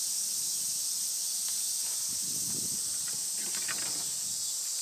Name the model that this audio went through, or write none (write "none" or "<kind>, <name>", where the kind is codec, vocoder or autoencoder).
none